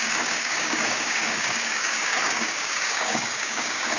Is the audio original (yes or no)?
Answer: no